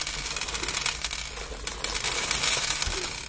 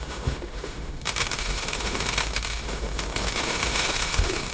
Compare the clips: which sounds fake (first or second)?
second